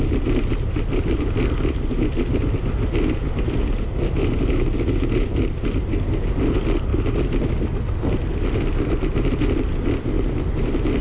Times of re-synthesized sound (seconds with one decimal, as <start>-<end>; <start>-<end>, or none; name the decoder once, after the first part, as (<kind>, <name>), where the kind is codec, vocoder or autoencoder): none

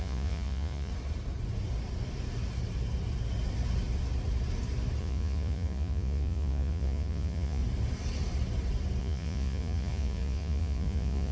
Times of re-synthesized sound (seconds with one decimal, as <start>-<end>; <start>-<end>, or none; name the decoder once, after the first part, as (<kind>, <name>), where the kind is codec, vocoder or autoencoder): 0.0-0.9 (vocoder, Vocos); 5.0-7.6; 9.0-11.3

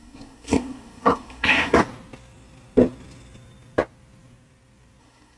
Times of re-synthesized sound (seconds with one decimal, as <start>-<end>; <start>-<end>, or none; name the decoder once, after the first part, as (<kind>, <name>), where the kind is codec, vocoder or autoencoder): 0.0-1.8 (codec, SNAC); 5.0-5.4

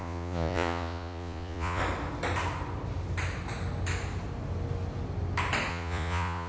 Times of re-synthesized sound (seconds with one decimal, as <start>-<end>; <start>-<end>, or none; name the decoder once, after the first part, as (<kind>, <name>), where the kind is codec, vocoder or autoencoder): 0.0-1.8 (vocoder, Vocos); 5.7-6.5

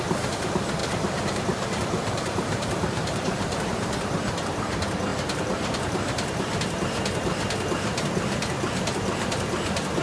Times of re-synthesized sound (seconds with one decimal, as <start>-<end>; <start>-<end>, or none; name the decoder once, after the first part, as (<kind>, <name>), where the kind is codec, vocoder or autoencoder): 0.8-3.7 (vocoder, BigVGAN v2); 5.1-6.6

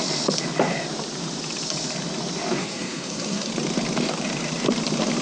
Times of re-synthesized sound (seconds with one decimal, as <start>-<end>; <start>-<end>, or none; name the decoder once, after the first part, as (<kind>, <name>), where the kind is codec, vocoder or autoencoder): 2.6-3.5 (codec, SNAC)

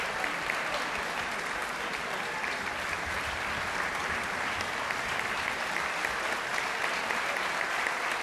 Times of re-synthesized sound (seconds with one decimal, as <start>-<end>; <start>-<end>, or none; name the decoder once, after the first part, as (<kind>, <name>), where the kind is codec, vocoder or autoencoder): none